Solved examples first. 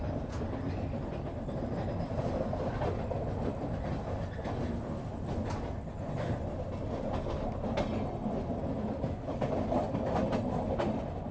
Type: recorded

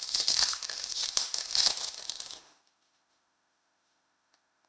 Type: remade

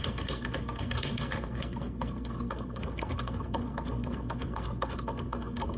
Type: remade